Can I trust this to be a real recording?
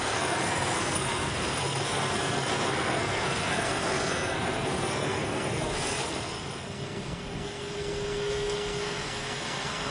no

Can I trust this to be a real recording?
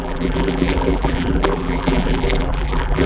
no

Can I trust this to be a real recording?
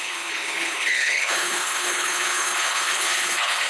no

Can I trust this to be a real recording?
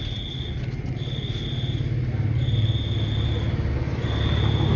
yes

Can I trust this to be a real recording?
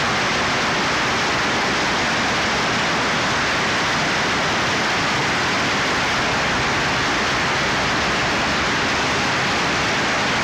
yes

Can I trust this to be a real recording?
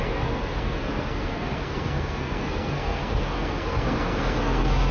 no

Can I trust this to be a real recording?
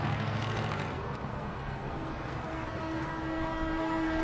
no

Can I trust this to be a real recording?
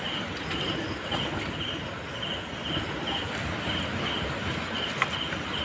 yes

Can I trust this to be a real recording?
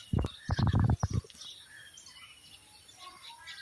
yes